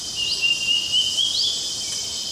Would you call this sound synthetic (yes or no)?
no